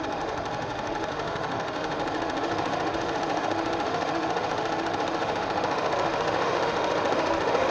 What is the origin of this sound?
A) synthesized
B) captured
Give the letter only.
A